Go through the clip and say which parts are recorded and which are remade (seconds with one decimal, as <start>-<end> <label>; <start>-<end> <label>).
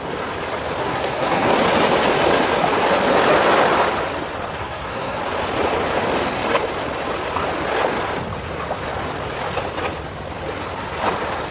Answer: 0.0-0.8 recorded; 0.8-1.6 remade; 1.6-4.6 recorded; 4.6-5.2 remade; 5.2-11.5 recorded